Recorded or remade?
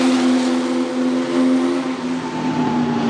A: recorded